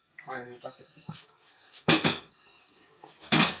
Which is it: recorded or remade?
remade